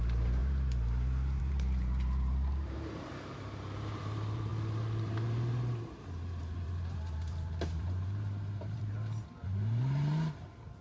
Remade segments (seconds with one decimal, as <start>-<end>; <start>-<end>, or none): 0.0-0.4; 1.4-10.8